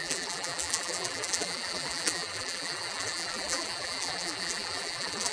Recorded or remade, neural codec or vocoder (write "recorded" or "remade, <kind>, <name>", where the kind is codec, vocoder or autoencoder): remade, vocoder, BigVGAN v2